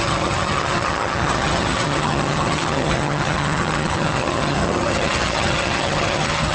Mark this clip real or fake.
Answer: fake